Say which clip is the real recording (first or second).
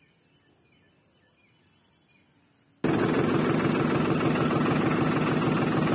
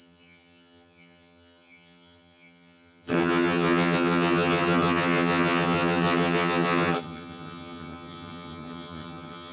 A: first